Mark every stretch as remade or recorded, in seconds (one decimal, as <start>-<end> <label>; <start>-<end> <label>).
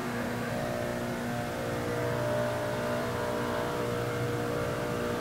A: 0.0-0.5 remade; 0.5-5.2 recorded